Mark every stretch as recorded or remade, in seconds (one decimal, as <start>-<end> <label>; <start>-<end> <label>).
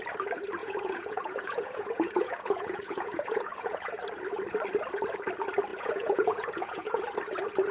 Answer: 0.0-0.6 recorded; 0.6-3.9 remade; 3.9-5.7 recorded; 5.7-7.0 remade; 7.0-7.7 recorded